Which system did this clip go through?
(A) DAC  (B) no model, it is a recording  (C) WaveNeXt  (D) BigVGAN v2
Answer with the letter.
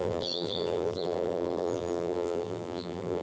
D